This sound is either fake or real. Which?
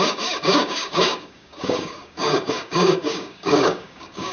fake